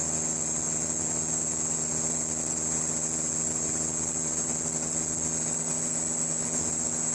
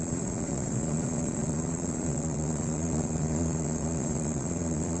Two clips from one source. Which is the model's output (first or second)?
second